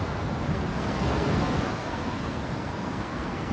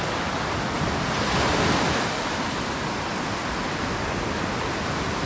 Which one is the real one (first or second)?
second